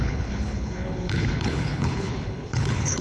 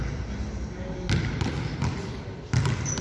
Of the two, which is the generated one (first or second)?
first